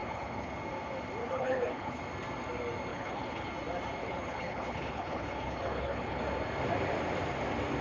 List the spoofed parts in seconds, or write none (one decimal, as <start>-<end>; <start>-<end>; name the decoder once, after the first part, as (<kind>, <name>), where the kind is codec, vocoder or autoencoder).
0.0-0.5 (codec, HILCodec); 1.2-2.0; 2.9-3.5; 4.0-6.2